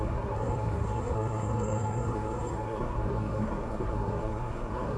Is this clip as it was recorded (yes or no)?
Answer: no